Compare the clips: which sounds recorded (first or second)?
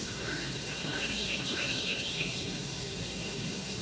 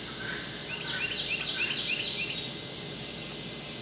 second